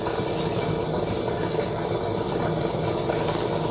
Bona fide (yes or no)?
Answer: yes